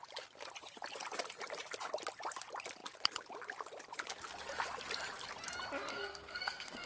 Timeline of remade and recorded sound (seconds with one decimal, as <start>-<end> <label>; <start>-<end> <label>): 0.0-5.9 recorded; 5.9-6.9 remade